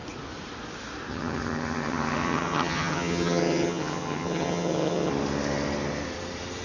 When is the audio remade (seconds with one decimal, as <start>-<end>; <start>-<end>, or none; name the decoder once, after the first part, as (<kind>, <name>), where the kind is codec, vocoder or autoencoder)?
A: 1.1-5.1 (vocoder, HiFi-GAN)